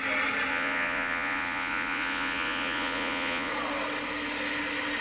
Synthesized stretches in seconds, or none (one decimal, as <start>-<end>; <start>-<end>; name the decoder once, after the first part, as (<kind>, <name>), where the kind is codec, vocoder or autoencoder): 0.5-3.5 (vocoder, Vocos)